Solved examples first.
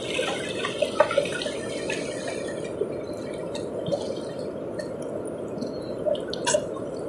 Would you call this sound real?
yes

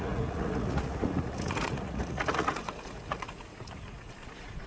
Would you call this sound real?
no